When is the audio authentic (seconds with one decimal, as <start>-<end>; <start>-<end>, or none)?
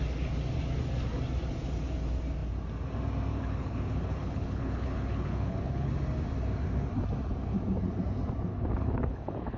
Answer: 0.0-3.3; 5.9-8.5